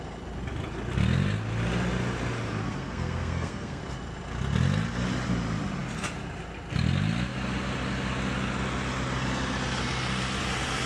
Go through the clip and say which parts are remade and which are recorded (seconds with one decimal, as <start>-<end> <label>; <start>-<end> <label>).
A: 0.0-2.6 recorded; 2.6-3.8 remade; 3.8-10.9 recorded